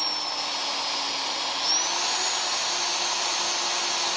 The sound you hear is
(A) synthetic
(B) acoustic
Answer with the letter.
B